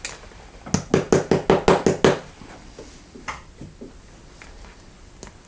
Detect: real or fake real